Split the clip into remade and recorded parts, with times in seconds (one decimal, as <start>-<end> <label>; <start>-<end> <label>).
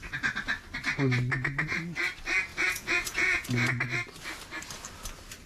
0.0-2.5 recorded; 2.5-3.5 remade; 3.5-5.5 recorded